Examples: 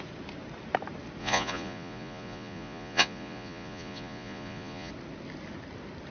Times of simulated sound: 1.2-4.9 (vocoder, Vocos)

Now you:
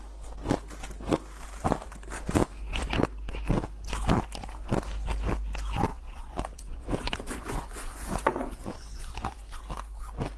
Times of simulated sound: 2.4-3.0 (vocoder, Vocos); 5.9-9.6

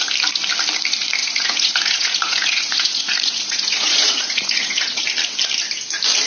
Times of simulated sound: 1.2-5.0 (vocoder, Vocos)

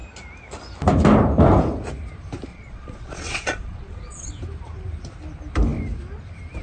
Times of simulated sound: 2.5-4.3 (vocoder, Vocos)